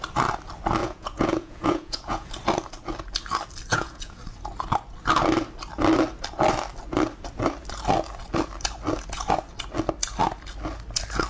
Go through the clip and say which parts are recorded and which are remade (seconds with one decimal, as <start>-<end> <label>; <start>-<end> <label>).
0.0-0.8 recorded; 0.8-2.3 remade; 2.3-3.7 recorded; 3.7-4.2 remade; 4.2-11.3 recorded